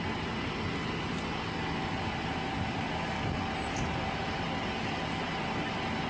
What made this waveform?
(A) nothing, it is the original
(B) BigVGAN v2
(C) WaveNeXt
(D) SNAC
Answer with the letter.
A